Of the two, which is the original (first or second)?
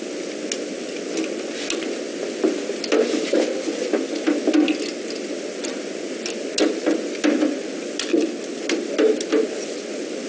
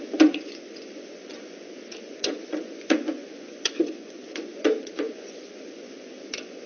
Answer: first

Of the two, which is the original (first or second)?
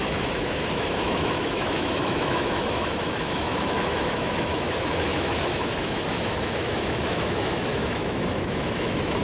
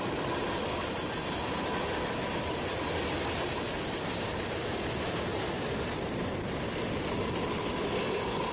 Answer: second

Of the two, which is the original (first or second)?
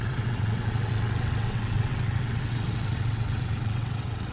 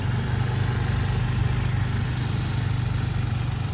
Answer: second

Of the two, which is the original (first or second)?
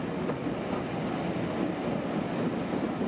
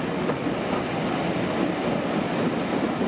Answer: first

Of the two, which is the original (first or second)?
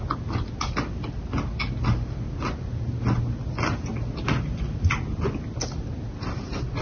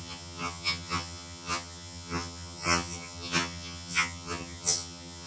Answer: first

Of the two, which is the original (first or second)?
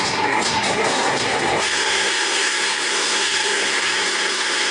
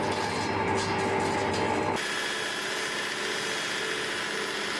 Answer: second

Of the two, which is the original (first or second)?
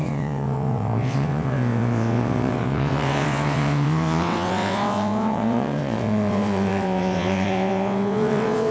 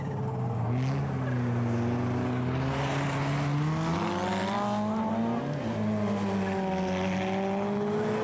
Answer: second